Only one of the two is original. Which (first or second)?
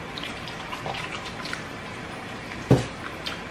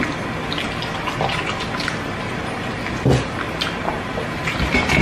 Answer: second